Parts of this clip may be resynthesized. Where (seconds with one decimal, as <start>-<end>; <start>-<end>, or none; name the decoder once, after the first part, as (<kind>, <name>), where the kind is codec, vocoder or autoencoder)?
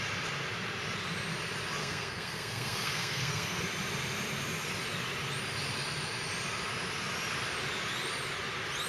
1.8-3.6 (codec, SNAC)